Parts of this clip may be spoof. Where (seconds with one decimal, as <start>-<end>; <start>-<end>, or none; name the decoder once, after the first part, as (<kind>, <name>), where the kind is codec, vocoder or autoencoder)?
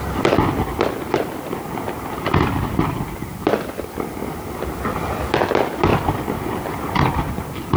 3.2-5.3 (vocoder, BigVGAN v2); 5.9-7.1